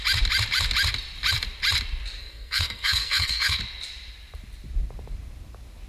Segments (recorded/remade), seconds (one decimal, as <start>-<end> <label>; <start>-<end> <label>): 0.0-2.2 recorded; 2.2-3.6 remade; 3.6-5.9 recorded